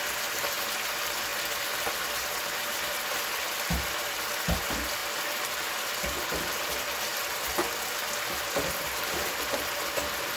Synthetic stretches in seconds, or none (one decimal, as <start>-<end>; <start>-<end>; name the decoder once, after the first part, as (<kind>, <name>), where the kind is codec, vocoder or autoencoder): none